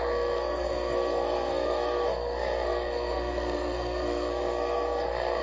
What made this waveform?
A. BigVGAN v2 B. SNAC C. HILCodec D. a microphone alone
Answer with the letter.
B